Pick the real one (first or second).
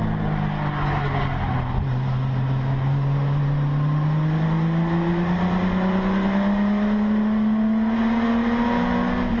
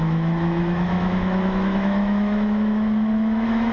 first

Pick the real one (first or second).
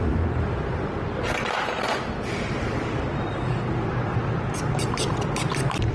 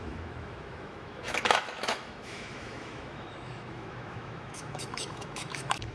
first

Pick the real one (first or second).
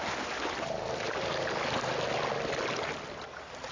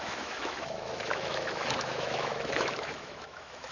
first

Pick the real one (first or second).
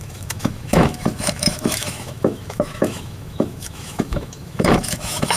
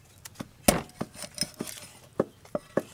second